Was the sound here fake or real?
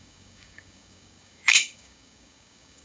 fake